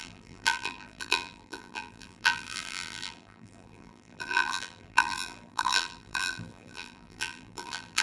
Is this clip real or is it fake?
fake